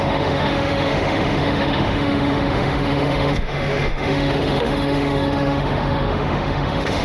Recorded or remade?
remade